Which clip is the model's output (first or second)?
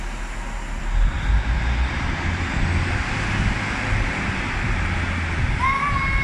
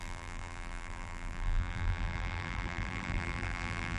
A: second